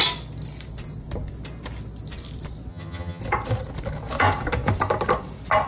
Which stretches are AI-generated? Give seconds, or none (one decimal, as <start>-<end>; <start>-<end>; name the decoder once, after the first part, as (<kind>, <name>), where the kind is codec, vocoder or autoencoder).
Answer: 2.7-3.2 (vocoder, HiFi-GAN)